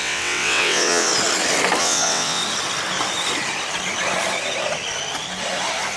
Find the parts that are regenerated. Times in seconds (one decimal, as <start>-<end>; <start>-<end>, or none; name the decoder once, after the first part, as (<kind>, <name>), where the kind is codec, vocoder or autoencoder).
0.0-1.1 (vocoder, WaveNeXt); 1.8-2.4